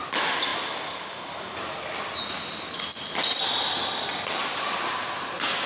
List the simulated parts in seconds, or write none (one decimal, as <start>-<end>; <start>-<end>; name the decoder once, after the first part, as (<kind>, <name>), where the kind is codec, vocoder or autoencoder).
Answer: none